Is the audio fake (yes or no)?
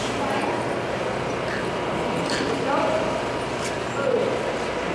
no